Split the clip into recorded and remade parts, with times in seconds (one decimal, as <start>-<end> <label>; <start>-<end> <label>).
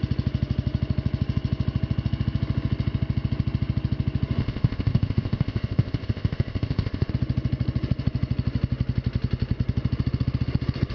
0.0-4.4 recorded; 4.4-7.1 remade; 7.1-10.9 recorded